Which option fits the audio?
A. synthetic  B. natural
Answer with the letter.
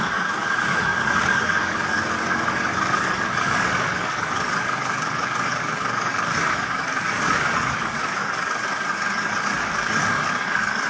A